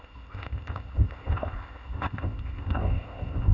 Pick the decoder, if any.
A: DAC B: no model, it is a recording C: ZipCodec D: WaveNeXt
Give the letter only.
C